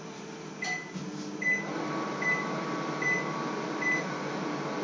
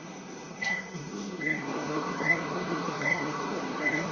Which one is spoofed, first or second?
second